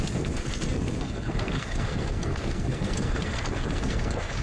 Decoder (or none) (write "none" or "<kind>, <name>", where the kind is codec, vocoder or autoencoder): codec, SNAC